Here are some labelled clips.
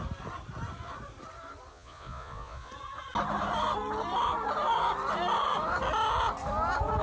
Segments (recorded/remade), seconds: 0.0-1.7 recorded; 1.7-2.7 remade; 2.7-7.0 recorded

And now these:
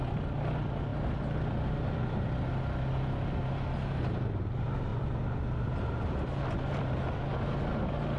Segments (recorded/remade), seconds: 0.0-8.2 recorded

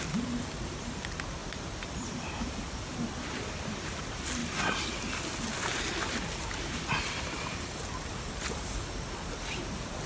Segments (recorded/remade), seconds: 0.0-1.4 recorded; 1.4-3.6 remade; 3.6-10.1 recorded

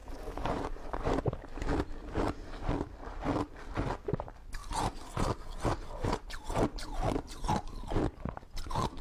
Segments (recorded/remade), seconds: 0.0-1.2 remade; 1.2-9.0 recorded

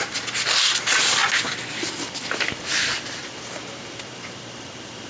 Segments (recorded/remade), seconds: 0.0-3.2 recorded; 3.2-5.1 remade

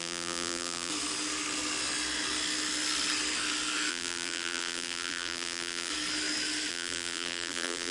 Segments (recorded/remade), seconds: 0.0-0.9 remade; 0.9-3.9 recorded; 3.9-5.9 remade; 5.9-6.7 recorded; 6.7-7.9 remade